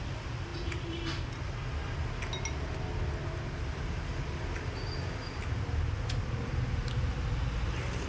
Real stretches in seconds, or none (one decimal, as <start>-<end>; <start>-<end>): 0.0-8.1